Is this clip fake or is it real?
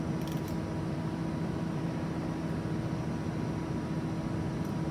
real